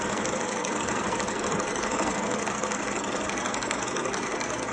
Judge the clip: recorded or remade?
remade